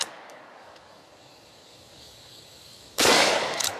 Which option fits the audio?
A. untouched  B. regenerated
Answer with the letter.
B